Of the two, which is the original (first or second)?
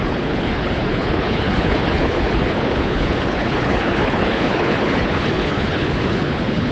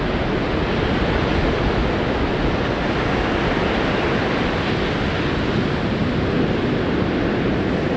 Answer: second